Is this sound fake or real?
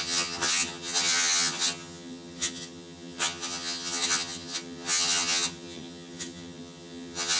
fake